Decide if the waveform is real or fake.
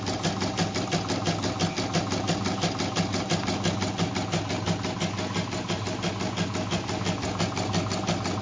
real